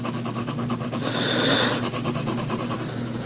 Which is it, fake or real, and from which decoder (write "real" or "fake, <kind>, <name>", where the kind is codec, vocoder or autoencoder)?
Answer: real